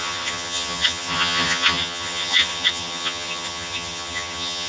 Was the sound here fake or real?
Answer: fake